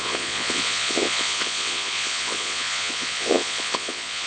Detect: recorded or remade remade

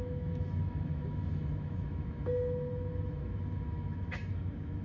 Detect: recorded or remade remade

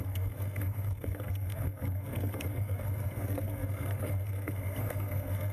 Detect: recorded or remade remade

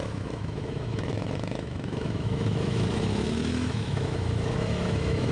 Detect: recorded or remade remade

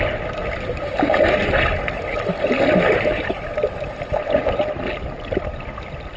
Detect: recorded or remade recorded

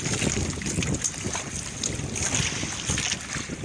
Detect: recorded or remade recorded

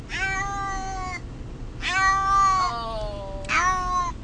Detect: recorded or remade recorded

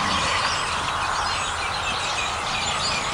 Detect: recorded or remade recorded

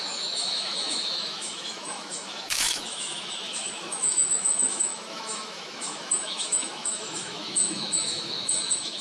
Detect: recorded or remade remade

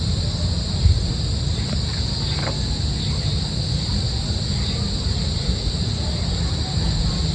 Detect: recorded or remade recorded